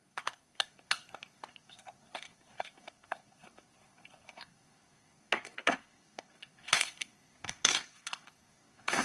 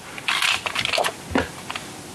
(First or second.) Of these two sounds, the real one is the second